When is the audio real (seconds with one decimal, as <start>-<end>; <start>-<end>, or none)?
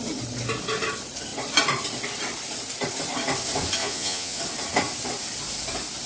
0.0-3.8; 4.4-6.1